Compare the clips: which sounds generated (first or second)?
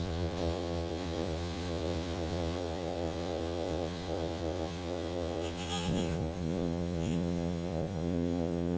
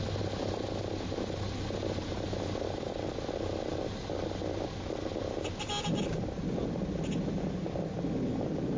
first